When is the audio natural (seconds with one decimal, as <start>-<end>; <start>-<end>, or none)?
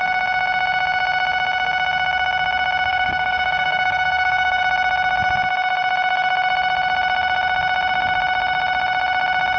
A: 0.0-2.9; 4.6-9.6